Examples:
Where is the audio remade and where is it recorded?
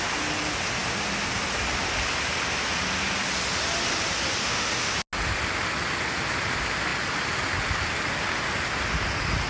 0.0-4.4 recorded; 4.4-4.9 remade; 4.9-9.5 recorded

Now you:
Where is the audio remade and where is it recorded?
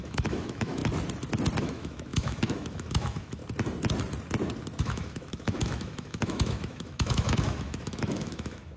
0.0-0.8 remade; 0.8-1.6 recorded; 1.6-3.4 remade; 3.4-4.8 recorded; 4.8-8.8 remade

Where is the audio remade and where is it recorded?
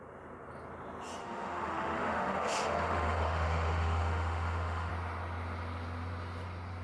0.0-1.2 recorded; 1.2-4.9 remade; 4.9-6.8 recorded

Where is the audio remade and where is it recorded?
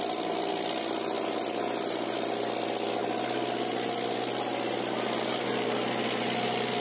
0.0-6.8 recorded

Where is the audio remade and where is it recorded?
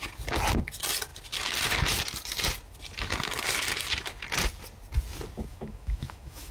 0.0-5.5 recorded; 5.5-6.5 remade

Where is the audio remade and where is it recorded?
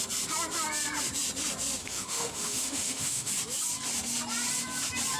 0.0-1.8 recorded; 1.8-3.3 remade; 3.3-5.2 recorded